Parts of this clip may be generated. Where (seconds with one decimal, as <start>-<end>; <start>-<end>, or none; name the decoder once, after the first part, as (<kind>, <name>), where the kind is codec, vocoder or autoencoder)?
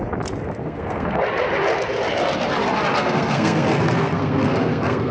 0.6-1.2 (codec, SNAC); 2.9-5.1